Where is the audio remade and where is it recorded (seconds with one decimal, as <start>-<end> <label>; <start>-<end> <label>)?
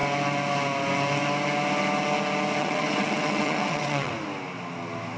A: 0.0-2.6 recorded; 2.6-4.1 remade; 4.1-5.2 recorded